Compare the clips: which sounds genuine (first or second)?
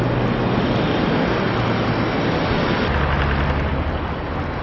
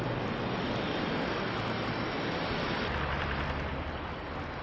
first